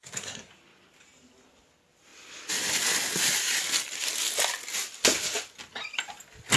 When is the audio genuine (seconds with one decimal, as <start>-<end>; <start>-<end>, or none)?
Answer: 0.5-6.6